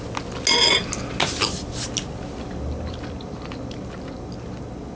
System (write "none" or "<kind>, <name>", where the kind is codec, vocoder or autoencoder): none